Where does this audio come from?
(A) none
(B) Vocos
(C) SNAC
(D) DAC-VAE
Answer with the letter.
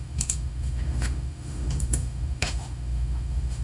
D